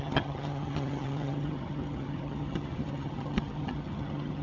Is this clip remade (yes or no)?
yes